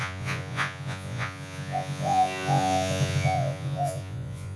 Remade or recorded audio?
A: remade